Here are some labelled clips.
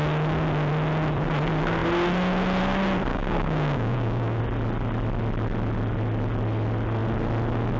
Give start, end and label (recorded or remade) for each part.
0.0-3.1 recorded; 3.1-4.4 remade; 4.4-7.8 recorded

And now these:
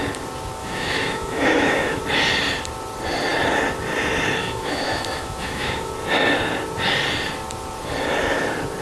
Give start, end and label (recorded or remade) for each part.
0.0-0.6 recorded; 0.6-2.0 remade; 2.0-4.4 recorded; 4.4-5.9 remade; 5.9-8.8 recorded

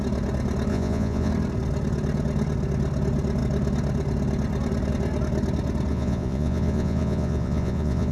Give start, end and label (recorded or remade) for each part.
0.0-0.7 recorded; 0.7-1.3 remade; 1.3-5.9 recorded; 5.9-8.1 remade